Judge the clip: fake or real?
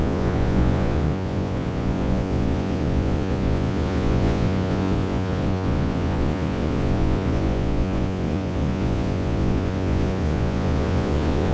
fake